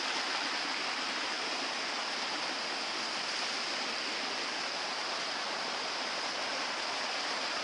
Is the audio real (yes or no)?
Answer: yes